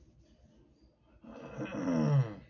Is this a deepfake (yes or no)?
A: no